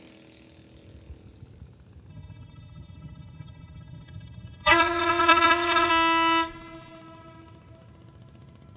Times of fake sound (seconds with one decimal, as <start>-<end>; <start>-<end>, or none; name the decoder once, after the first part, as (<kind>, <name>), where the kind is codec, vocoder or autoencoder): 2.1-5.9 (vocoder, HiFi-GAN)